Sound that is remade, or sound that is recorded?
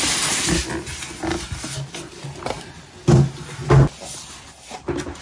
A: recorded